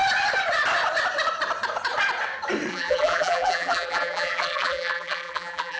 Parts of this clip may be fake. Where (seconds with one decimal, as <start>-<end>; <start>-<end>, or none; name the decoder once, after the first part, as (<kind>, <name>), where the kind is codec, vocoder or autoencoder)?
2.7-5.8 (vocoder, BigVGAN v2)